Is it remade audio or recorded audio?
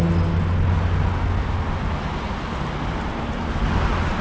recorded